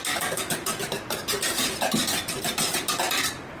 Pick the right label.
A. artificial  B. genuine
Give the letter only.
B